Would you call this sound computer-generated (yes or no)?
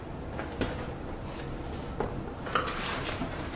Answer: no